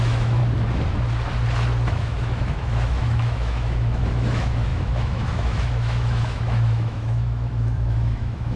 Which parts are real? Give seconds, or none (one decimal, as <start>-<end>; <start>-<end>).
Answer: 0.4-1.9

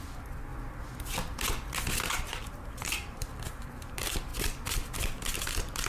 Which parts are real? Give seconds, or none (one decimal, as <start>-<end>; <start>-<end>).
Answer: 0.5-2.1; 4.3-5.3

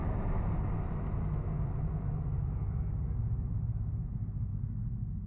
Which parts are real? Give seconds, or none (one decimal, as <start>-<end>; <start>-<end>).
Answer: 0.0-3.2; 4.5-5.3

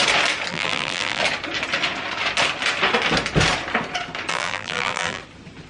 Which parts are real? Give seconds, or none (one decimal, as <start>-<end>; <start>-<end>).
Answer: 0.0-0.5; 1.2-4.3; 5.2-5.7

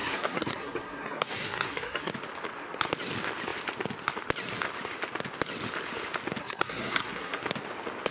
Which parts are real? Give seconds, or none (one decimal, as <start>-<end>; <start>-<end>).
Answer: 2.1-6.4; 7.4-8.1

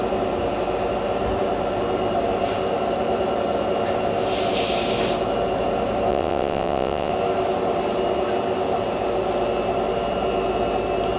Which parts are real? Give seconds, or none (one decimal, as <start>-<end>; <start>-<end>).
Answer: 0.0-6.1; 7.1-11.2

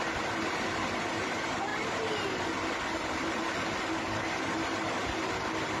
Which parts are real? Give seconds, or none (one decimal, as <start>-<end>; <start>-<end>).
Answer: 0.0-5.8